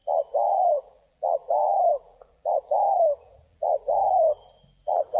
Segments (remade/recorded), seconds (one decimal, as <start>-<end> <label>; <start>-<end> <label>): 0.0-0.5 recorded; 0.5-5.2 remade